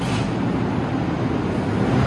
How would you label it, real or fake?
real